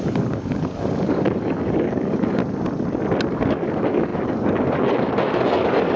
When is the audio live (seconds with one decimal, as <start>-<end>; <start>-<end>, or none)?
2.4-3.3